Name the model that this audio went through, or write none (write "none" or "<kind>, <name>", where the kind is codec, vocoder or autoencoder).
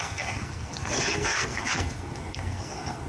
codec, SNAC